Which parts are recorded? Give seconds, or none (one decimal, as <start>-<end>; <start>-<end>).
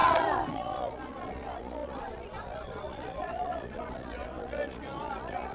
none